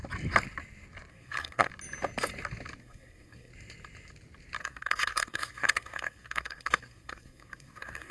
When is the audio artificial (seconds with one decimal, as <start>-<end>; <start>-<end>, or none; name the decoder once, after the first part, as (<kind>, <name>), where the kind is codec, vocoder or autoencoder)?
1.1-1.7 (codec, SNAC); 2.8-3.5; 4.6-8.1